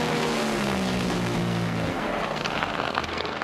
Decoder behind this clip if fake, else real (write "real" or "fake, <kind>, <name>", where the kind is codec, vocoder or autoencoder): fake, codec, SNAC